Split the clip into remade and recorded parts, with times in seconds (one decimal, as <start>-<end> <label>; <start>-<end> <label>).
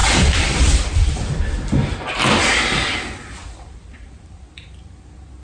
0.0-1.3 remade; 1.3-1.8 recorded; 1.8-4.9 remade; 4.9-5.4 recorded